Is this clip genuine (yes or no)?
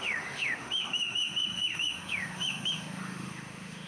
no